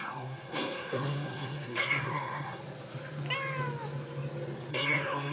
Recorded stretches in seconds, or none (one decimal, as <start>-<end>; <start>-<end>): 2.6-4.7